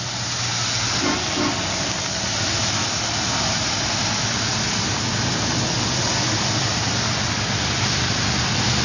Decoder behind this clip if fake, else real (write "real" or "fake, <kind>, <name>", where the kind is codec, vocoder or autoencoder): real